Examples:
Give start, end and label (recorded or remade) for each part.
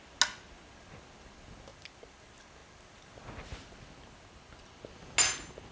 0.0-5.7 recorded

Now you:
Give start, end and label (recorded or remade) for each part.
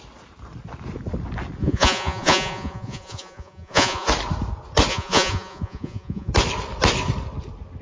0.0-1.6 recorded; 1.6-4.1 remade; 4.1-4.9 recorded; 4.9-6.3 remade; 6.3-7.8 recorded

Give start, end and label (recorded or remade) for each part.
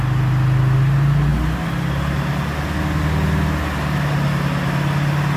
0.0-5.4 recorded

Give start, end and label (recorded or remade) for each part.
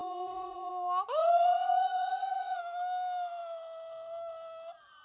0.0-0.7 remade; 0.7-1.2 recorded; 1.2-2.6 remade; 2.6-5.0 recorded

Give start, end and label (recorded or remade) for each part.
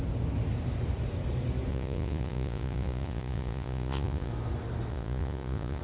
0.0-1.7 recorded; 1.7-4.3 remade; 4.3-4.9 recorded; 4.9-5.8 remade